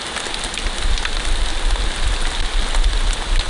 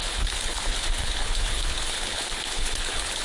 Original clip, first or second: first